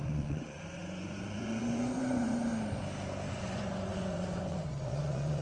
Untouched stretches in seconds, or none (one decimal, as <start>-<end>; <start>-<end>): 2.5-3.3